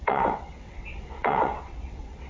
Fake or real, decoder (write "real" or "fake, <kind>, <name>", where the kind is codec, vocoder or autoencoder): fake, vocoder, WaveNeXt